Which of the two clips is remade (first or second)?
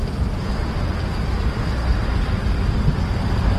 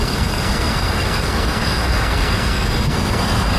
second